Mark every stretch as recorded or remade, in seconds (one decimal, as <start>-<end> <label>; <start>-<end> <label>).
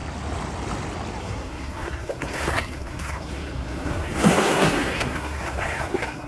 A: 0.0-1.2 recorded; 1.2-6.3 remade